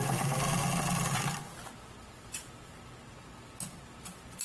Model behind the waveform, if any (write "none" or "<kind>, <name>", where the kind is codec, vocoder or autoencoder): none